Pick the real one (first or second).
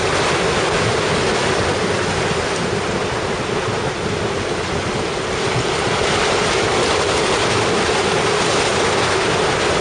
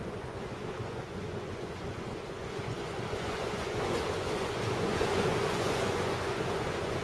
first